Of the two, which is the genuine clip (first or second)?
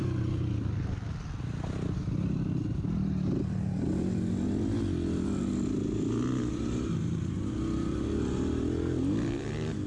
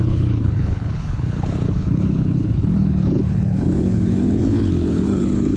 first